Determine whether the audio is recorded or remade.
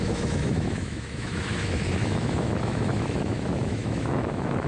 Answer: remade